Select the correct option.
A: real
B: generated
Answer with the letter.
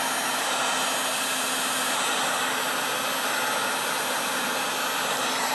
A